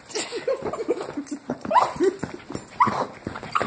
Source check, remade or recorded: recorded